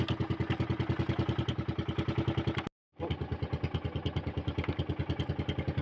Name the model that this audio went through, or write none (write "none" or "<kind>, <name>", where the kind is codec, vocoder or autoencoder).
none